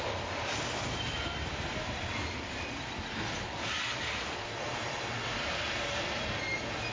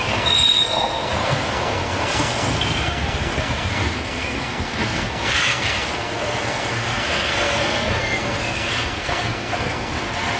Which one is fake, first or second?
second